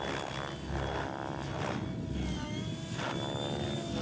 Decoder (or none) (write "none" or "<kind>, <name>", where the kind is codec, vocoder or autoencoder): none